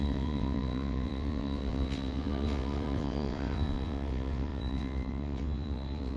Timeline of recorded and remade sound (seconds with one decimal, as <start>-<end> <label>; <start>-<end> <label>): 0.0-6.2 remade